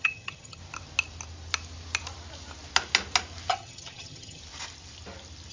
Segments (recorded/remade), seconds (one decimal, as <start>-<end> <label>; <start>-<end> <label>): 0.0-0.6 remade; 0.6-3.5 recorded; 3.5-4.4 remade; 4.4-5.5 recorded